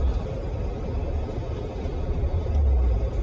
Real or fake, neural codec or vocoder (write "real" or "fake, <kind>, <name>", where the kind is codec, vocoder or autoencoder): real